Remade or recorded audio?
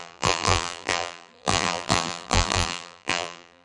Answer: remade